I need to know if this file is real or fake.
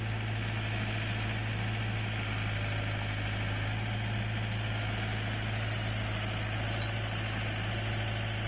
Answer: real